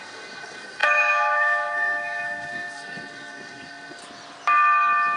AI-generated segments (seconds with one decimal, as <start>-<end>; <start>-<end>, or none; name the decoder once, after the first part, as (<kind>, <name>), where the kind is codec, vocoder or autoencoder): 0.0-4.0 (codec, SNAC)